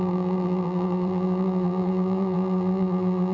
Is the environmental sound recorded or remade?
remade